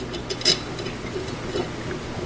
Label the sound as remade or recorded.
recorded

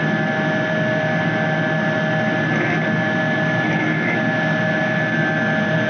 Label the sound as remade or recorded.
recorded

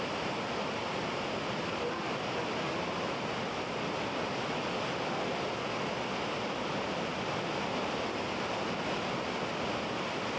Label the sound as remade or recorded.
recorded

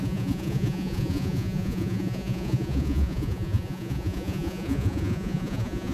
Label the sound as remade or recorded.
remade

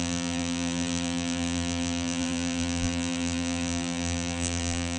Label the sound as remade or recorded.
remade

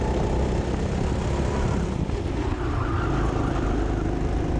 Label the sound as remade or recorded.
recorded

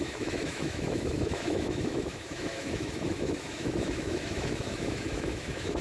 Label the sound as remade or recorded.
remade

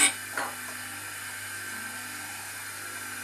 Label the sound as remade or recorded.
recorded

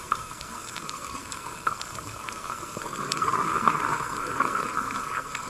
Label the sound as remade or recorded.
remade